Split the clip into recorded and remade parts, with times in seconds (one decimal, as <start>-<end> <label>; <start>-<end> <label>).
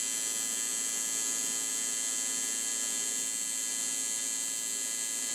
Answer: 0.0-5.3 recorded